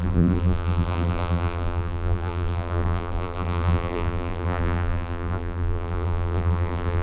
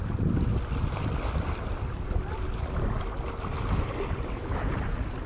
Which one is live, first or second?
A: second